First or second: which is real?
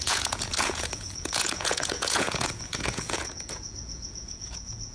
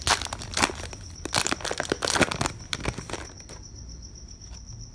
second